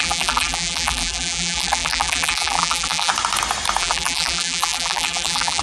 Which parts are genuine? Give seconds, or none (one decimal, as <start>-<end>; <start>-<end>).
3.1-3.8